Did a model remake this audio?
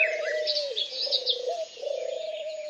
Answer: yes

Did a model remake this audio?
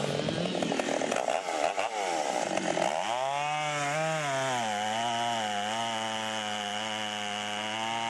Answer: no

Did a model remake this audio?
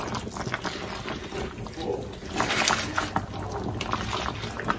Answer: no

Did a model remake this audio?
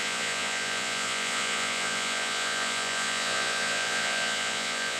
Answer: yes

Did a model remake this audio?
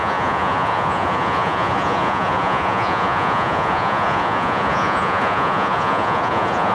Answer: yes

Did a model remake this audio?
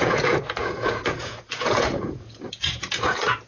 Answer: yes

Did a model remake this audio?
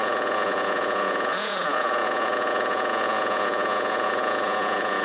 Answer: yes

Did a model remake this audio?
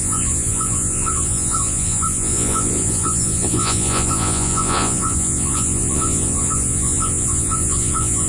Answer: yes